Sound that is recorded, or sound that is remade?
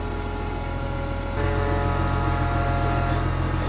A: recorded